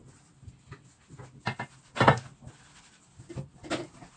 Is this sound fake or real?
real